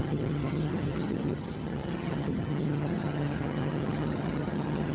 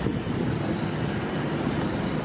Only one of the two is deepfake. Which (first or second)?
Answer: first